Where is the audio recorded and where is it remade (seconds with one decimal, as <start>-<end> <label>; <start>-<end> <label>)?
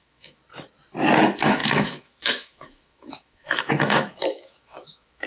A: 0.0-0.4 remade; 0.4-1.2 recorded; 1.2-5.3 remade